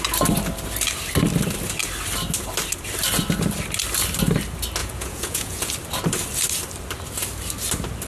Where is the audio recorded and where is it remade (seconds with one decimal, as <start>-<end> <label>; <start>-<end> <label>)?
0.0-4.8 recorded; 4.8-5.7 remade; 5.7-8.1 recorded